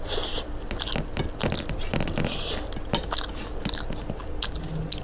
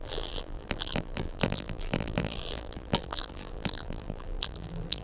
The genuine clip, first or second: first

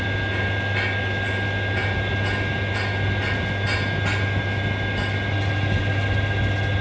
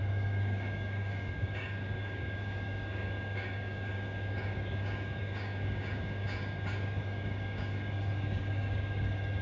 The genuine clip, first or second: first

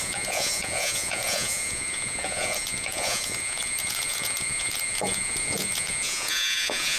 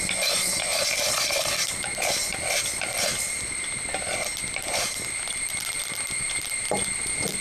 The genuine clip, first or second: second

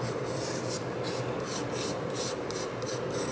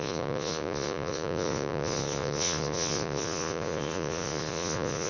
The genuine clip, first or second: first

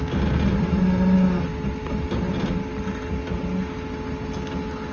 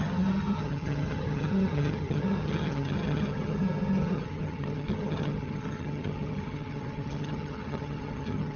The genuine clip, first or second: first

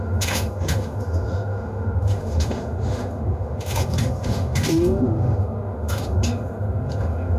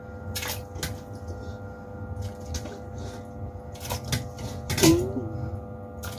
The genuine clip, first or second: second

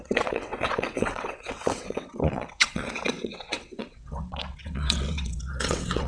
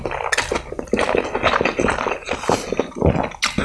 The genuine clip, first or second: second